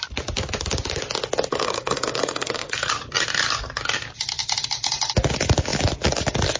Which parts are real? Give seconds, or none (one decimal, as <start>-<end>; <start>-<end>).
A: 0.0-1.5; 2.9-6.6